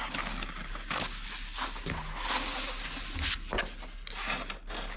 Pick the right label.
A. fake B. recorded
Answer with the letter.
B